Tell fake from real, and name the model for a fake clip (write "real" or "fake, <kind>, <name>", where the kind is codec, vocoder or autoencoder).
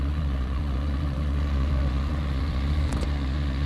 fake, vocoder, Vocos